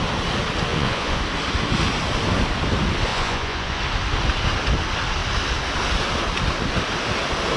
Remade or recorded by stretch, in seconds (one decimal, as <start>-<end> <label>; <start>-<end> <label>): 0.0-0.7 recorded; 0.7-1.2 remade; 1.2-3.1 recorded; 3.1-3.8 remade; 3.8-7.6 recorded